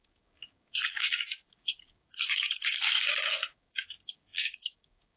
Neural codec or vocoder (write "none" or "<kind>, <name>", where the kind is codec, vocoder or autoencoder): codec, DAC